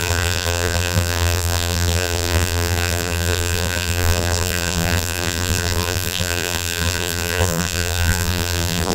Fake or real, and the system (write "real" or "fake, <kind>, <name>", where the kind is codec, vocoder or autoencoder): fake, vocoder, BigVGAN v2